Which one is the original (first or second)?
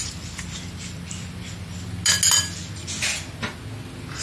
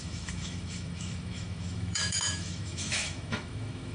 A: first